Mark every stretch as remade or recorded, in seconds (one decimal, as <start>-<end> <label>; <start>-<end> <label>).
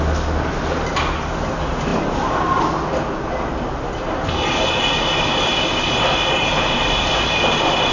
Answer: 0.0-7.9 recorded